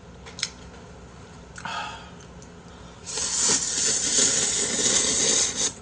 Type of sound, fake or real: real